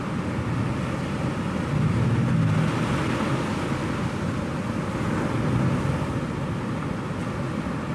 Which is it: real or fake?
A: real